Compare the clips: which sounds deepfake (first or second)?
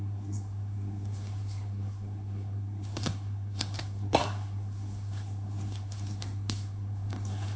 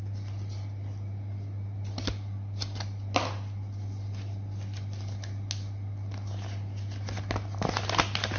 first